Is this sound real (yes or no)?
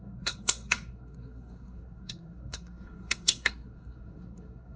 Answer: no